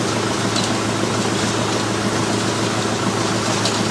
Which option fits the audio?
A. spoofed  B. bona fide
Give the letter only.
B